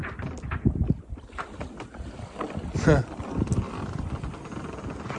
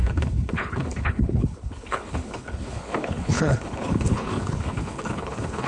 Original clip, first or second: first